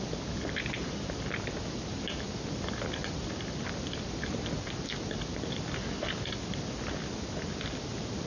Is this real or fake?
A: real